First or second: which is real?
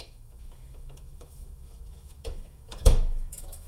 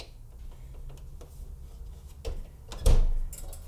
second